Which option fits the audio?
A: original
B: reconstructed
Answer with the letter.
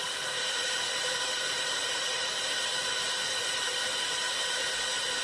A